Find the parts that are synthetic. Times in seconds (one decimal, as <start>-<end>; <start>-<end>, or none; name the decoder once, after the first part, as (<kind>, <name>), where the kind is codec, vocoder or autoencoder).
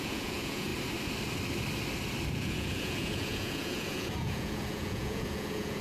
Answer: 0.0-0.7 (vocoder, Vocos); 2.3-5.8